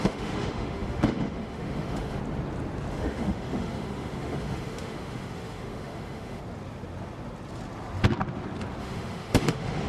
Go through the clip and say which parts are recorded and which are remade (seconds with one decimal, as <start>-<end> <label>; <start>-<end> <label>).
0.0-2.2 remade; 2.2-2.9 recorded; 2.9-6.4 remade; 6.4-8.8 recorded; 8.8-9.9 remade